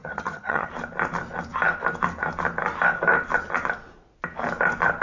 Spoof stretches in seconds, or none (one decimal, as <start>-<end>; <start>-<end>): 0.0-0.7